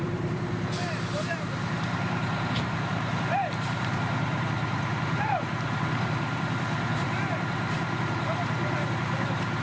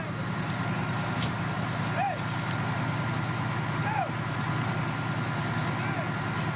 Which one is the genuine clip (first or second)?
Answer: second